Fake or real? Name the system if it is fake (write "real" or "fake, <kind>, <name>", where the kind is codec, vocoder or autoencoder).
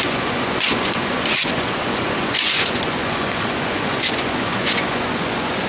fake, vocoder, Vocos